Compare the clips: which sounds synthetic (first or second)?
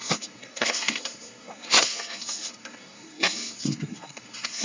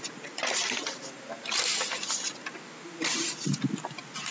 first